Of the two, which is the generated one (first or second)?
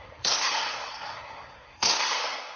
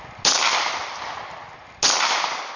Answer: first